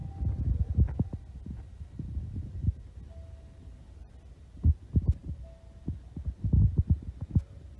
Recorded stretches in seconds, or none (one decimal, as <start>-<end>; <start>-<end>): 0.0-7.8